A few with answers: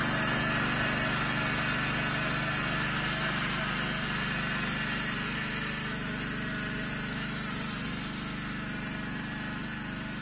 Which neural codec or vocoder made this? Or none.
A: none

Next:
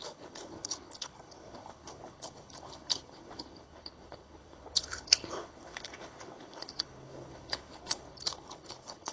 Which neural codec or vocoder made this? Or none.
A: codec, HILCodec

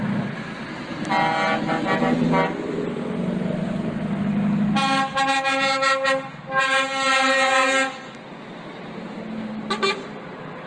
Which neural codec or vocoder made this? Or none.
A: none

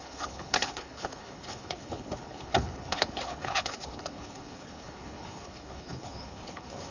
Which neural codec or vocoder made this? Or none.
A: codec, HILCodec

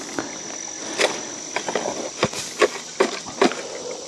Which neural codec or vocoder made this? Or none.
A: none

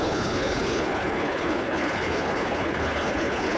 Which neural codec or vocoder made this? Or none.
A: codec, HILCodec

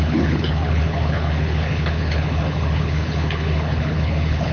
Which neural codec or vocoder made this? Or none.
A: codec, HILCodec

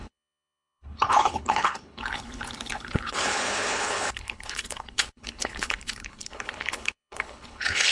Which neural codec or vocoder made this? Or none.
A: codec, HILCodec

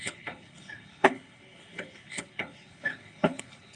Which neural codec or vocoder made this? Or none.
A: codec, HILCodec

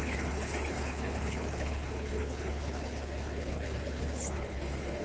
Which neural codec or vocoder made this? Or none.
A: codec, HILCodec